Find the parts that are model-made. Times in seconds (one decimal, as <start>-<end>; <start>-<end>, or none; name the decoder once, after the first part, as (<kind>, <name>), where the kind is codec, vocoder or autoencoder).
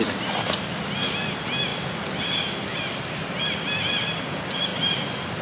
4.7-5.4 (vocoder, BigVGAN v2)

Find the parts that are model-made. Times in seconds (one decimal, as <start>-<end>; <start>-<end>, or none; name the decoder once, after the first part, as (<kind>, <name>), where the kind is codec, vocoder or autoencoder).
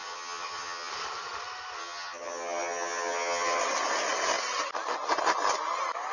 0.0-0.9 (vocoder, HiFi-GAN); 1.8-3.6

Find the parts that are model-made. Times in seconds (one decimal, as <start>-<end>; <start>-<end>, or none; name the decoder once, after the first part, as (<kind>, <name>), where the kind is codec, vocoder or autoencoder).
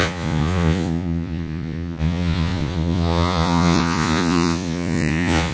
0.0-5.5 (vocoder, Vocos)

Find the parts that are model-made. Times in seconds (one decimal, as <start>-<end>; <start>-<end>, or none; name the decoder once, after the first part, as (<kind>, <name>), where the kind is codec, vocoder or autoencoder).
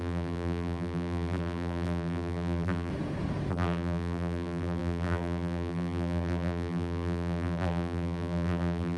0.0-2.9 (vocoder, BigVGAN v2); 3.5-9.0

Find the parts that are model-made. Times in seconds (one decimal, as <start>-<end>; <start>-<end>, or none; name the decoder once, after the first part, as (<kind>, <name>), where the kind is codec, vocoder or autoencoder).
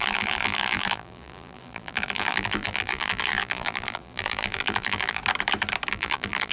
0.0-5.2 (vocoder, BigVGAN v2); 5.9-6.5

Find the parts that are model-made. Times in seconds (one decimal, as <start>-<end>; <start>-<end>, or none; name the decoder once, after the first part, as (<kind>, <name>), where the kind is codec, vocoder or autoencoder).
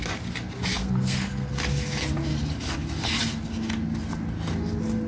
0.8-1.5 (codec, SNAC)